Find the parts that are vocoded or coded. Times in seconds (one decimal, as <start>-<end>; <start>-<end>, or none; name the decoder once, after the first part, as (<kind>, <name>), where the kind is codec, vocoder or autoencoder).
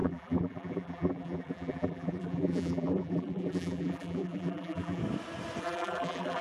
0.0-5.0 (vocoder, BigVGAN v2); 5.6-6.4